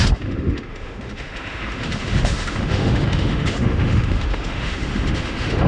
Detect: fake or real fake